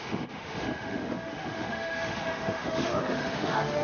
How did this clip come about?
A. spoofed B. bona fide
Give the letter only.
A